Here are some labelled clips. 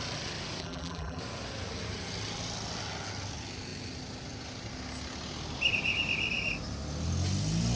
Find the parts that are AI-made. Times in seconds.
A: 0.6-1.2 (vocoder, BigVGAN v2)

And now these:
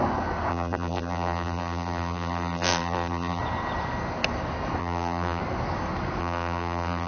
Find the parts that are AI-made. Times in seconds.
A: 0.5-3.4 (vocoder, BigVGAN v2); 4.8-5.4; 6.2-7.1

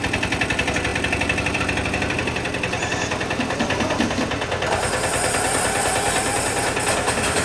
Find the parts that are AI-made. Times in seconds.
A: 0.9-1.6 (vocoder, BigVGAN v2)

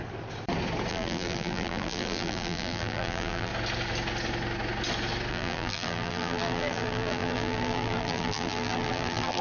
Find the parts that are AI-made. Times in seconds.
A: 0.9-3.5 (vocoder, BigVGAN v2); 5.3-9.4

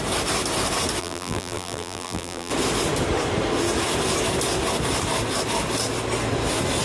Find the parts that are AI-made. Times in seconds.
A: 1.0-2.5 (vocoder, BigVGAN v2)

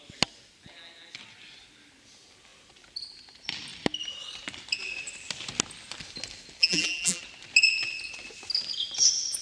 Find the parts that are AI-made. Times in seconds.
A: 6.6-7.2 (vocoder, BigVGAN v2)